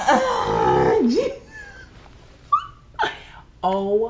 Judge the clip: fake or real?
real